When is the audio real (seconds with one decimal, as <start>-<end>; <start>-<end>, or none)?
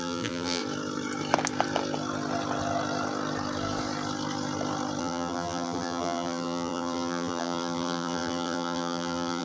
0.6-5.0